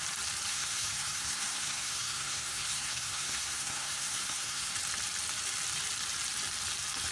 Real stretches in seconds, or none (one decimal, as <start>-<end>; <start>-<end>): 0.0-0.5; 4.7-7.1